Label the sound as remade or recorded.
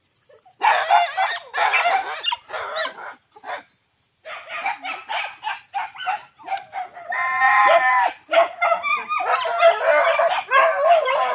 recorded